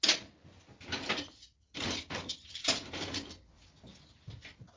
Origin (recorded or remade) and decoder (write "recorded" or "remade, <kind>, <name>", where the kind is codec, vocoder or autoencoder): recorded